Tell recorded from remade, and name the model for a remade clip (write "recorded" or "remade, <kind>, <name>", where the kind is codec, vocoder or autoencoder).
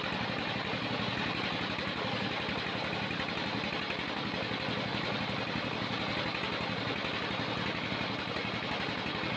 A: recorded